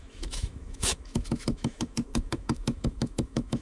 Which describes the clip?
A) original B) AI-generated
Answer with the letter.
B